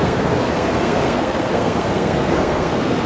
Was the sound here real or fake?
fake